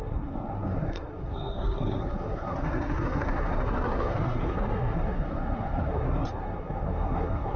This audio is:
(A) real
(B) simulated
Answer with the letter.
B